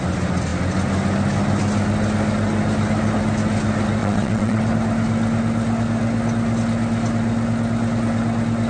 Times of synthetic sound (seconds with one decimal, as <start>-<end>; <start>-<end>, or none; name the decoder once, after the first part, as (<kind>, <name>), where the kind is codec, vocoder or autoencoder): 4.0-4.6 (vocoder, Vocos)